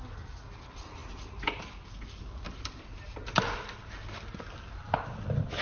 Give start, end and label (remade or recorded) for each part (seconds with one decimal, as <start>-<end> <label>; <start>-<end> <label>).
0.0-5.6 recorded